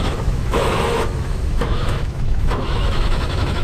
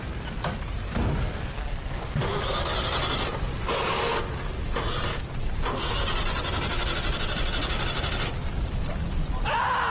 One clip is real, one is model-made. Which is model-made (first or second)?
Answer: first